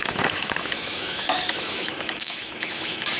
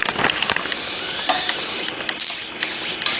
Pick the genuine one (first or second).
second